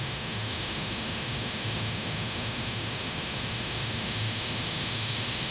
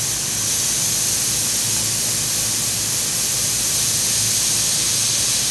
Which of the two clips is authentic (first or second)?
second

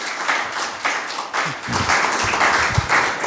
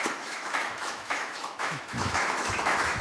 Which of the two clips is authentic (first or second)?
first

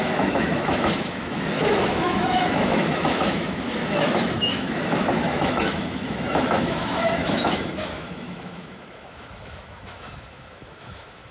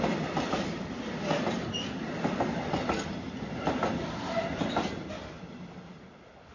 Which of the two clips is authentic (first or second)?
second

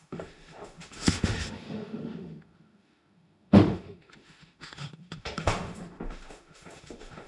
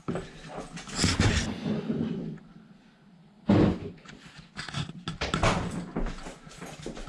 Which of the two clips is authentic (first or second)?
second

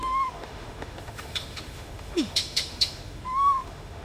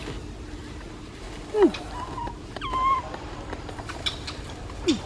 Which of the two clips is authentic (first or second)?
second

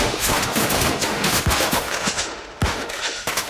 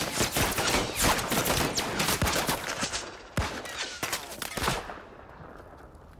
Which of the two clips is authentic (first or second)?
second